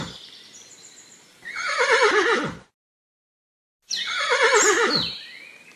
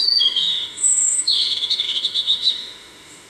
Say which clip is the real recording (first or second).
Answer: first